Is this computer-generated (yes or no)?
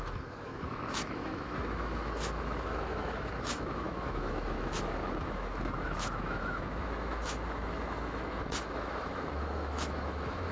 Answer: yes